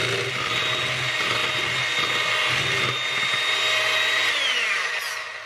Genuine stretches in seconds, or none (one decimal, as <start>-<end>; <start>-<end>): 0.0-5.5